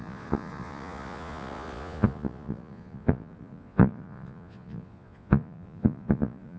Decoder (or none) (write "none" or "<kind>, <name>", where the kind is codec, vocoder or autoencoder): vocoder, Vocos